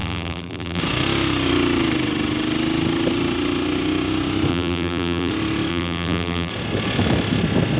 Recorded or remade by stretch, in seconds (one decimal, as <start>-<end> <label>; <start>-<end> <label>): 0.0-0.8 remade; 0.8-4.5 recorded; 4.5-5.3 remade; 5.3-5.7 recorded; 5.7-6.5 remade; 6.5-7.8 recorded